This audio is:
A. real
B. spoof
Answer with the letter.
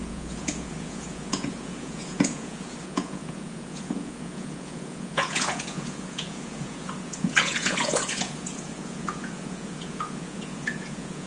B